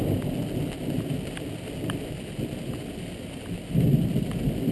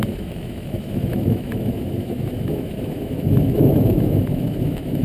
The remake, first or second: second